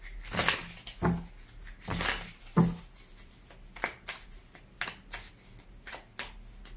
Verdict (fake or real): real